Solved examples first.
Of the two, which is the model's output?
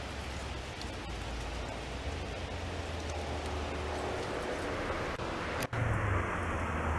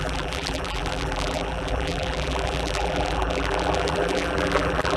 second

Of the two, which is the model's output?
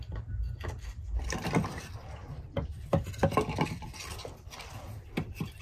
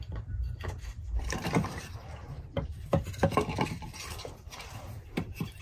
second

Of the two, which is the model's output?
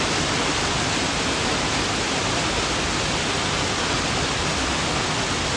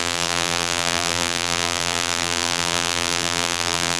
second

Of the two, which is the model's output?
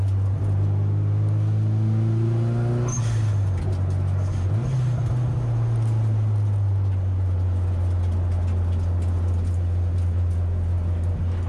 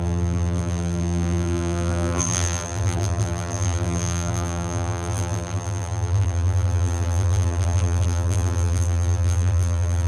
second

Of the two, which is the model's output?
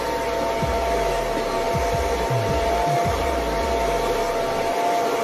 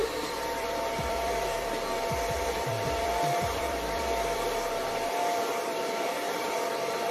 second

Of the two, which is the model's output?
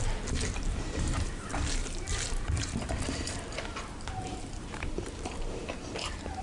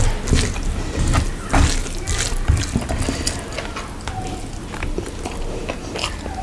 first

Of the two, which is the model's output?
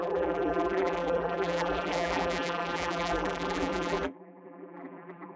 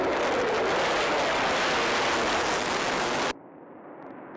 first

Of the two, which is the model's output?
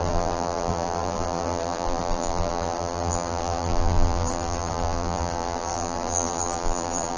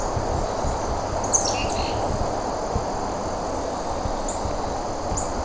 first